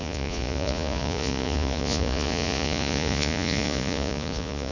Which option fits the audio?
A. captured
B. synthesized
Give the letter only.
B